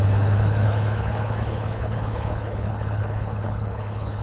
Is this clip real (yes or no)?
no